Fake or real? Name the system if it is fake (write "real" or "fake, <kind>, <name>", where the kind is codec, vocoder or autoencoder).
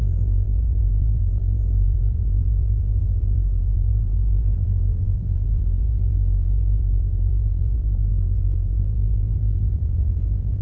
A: fake, vocoder, BigVGAN v2